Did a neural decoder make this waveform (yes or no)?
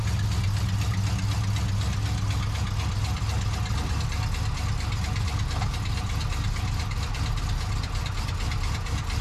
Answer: no